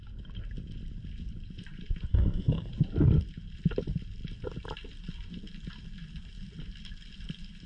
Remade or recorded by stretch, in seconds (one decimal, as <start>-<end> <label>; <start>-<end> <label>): 0.0-2.1 recorded; 2.1-2.7 remade; 2.7-7.7 recorded